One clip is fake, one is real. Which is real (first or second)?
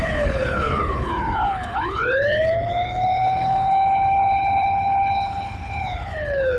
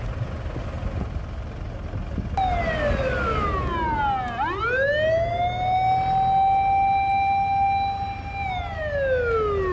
second